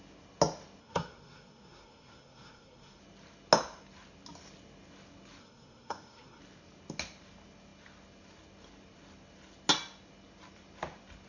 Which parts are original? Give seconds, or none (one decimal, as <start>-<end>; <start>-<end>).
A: 0.0-0.8; 3.0-5.4; 6.4-11.3